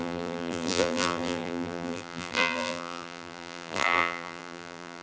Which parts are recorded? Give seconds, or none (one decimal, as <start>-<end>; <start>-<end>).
none